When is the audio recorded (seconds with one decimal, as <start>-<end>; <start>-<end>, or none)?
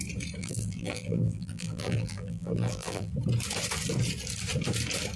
0.0-0.4; 3.1-5.2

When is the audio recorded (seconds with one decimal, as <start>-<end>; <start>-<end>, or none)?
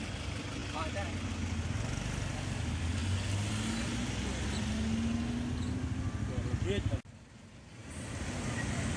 0.0-9.0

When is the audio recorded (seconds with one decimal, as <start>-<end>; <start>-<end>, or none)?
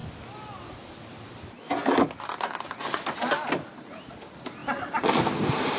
0.0-5.8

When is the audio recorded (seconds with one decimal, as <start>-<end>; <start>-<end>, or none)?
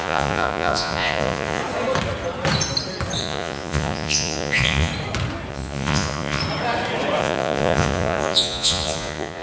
1.6-3.2; 4.9-5.5; 6.4-7.2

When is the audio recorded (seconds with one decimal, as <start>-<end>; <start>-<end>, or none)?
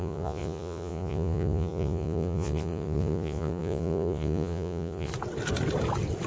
5.1-6.3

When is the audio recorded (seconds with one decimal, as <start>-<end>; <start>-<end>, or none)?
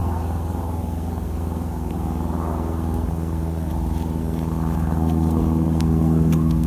3.7-4.2